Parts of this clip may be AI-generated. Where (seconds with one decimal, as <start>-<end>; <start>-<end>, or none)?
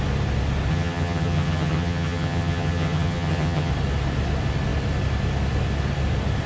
0.7-3.7